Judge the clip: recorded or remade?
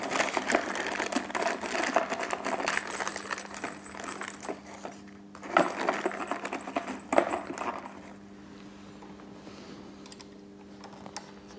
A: recorded